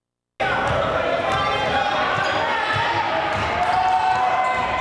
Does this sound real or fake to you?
real